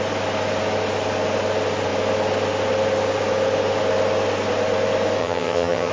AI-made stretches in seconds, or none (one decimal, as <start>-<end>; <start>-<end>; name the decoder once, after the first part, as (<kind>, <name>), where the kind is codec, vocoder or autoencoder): 5.2-5.9 (vocoder, HiFi-GAN)